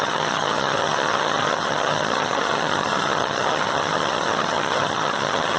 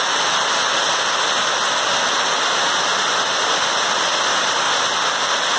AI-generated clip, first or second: first